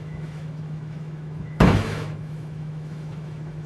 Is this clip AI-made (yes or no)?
yes